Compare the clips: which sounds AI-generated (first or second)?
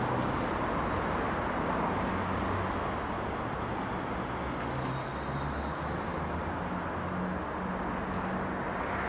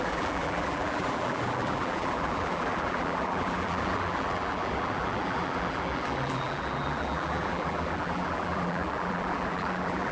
second